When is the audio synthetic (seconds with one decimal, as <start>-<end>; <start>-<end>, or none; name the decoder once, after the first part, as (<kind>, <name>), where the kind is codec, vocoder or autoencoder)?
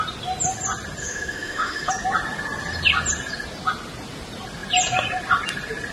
1.0-1.9 (autoencoder, DAC-VAE)